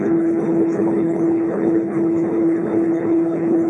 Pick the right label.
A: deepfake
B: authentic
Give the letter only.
A